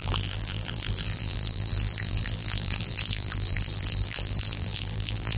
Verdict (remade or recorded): remade